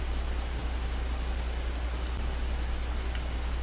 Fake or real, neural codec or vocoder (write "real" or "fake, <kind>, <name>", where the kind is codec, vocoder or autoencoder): real